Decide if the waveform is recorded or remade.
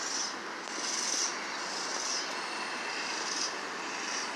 recorded